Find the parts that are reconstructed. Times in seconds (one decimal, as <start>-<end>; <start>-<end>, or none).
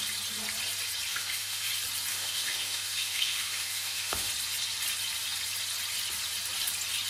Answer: 1.1-1.7; 2.1-4.3